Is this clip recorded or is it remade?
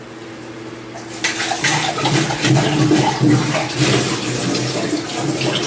recorded